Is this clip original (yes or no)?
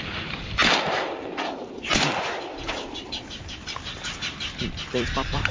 no